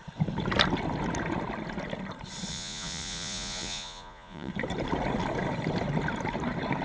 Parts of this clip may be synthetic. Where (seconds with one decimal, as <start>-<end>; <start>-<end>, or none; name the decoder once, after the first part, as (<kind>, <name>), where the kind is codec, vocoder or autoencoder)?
2.5-4.5 (vocoder, Vocos)